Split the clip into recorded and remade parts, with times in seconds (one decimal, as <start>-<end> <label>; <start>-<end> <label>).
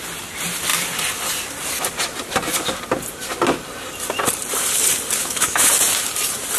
0.0-5.2 recorded; 5.2-5.7 remade; 5.7-6.6 recorded